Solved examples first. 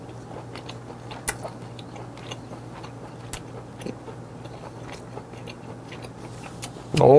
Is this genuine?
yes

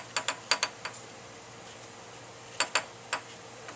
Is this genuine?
yes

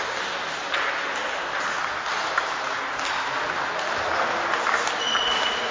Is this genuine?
yes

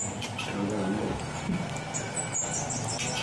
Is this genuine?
yes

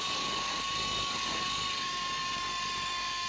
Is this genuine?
no